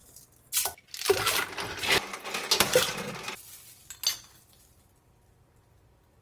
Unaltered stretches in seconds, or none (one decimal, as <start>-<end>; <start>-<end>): 0.0-6.2